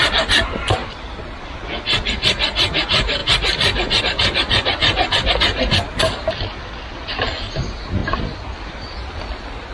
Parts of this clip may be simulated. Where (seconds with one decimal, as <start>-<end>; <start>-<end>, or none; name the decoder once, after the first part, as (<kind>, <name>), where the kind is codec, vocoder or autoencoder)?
0.0-3.2 (vocoder, BigVGAN v2); 4.0-4.8; 7.5-8.0; 8.6-9.7